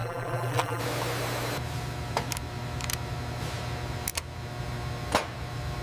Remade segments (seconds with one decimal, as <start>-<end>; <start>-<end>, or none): 0.0-0.8